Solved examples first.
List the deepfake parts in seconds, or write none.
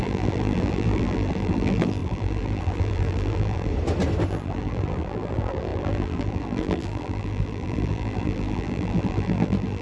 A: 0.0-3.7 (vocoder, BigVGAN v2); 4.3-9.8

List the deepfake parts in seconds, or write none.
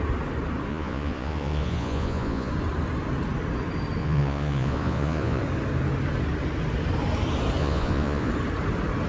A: 0.7-2.5 (vocoder, Vocos); 4.0-5.4; 7.6-8.3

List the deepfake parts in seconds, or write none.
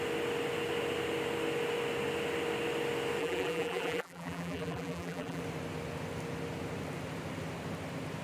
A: 3.2-5.4 (vocoder, BigVGAN v2)